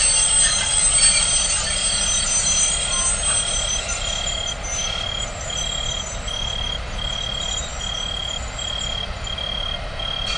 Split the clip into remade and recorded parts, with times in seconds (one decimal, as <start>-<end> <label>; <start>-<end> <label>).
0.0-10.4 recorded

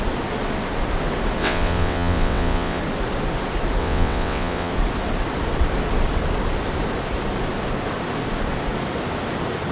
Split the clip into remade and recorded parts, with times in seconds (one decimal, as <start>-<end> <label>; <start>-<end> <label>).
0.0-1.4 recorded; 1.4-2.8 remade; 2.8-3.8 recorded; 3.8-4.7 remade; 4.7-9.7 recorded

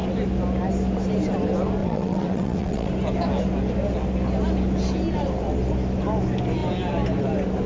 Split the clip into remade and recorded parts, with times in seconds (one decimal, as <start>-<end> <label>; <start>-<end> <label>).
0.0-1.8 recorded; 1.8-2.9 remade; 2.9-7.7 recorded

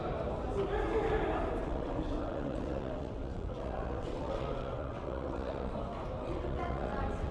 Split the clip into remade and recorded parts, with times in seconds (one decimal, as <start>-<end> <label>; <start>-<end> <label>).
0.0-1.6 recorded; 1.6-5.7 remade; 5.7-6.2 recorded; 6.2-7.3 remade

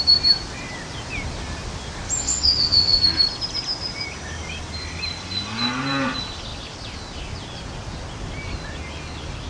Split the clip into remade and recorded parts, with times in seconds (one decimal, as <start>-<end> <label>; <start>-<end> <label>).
0.0-2.2 recorded; 2.2-3.0 remade; 3.0-9.5 recorded

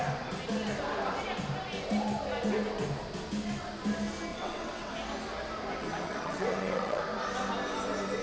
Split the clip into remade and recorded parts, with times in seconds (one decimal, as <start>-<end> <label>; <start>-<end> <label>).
0.0-4.3 recorded; 4.3-4.9 remade; 4.9-5.8 recorded; 5.8-7.0 remade; 7.0-8.2 recorded

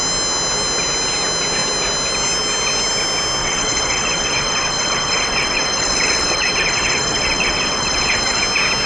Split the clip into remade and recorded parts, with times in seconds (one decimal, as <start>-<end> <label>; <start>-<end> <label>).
0.0-3.4 recorded; 3.4-8.4 remade; 8.4-8.9 recorded

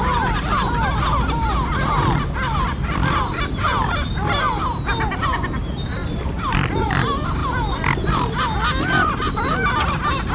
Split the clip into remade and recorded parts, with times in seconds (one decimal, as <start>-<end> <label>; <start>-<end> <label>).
0.0-10.3 recorded